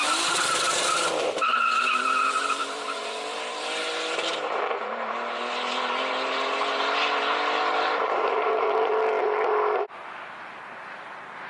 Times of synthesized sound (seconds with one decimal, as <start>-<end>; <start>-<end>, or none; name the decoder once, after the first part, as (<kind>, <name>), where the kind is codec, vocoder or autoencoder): 0.0-9.1 (vocoder, BigVGAN v2); 10.0-11.5